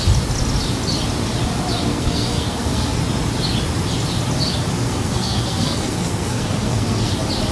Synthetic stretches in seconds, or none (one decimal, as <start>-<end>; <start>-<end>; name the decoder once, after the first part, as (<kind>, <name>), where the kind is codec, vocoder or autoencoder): 1.9-3.0 (codec, SNAC); 4.8-7.1